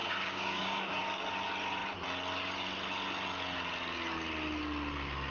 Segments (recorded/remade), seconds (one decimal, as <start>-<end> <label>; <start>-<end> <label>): 0.0-1.0 remade; 1.0-5.3 recorded

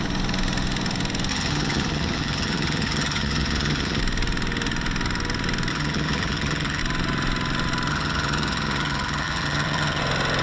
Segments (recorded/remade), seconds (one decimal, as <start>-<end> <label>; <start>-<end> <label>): 0.0-1.3 recorded; 1.3-4.0 remade; 4.0-5.7 recorded; 5.7-6.8 remade; 6.8-7.9 recorded; 7.9-10.0 remade; 10.0-10.4 recorded

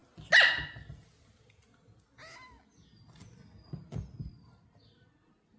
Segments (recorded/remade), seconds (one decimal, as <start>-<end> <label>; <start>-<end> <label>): 0.0-5.6 recorded

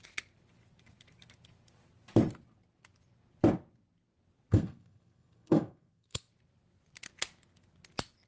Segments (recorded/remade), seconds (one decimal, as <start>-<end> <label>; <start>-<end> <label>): 0.0-4.5 recorded; 4.5-6.3 remade; 6.3-8.3 recorded

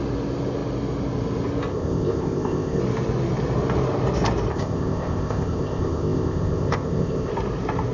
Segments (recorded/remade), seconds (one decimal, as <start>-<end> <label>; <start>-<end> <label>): 0.0-1.7 recorded; 1.7-2.8 remade; 2.8-4.5 recorded; 4.5-7.3 remade; 7.3-7.9 recorded

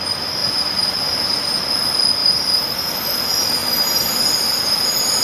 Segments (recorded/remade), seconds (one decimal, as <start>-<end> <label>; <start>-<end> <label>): 0.0-0.4 recorded; 0.4-1.6 remade; 1.6-2.2 recorded; 2.2-2.9 remade; 2.9-3.6 recorded; 3.6-4.2 remade; 4.2-5.2 recorded

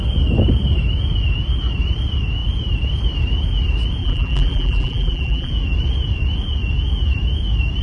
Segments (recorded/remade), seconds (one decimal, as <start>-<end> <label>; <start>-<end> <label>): 0.0-4.0 recorded; 4.0-5.5 remade; 5.5-7.8 recorded